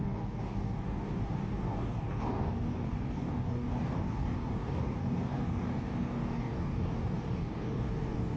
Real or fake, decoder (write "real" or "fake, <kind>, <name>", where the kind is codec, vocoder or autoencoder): fake, codec, DAC